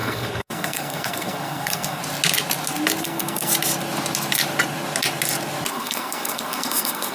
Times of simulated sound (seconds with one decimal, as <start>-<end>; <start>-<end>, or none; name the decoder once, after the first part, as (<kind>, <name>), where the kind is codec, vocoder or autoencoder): 0.0-2.0 (codec, SNAC); 3.0-3.5; 5.7-7.1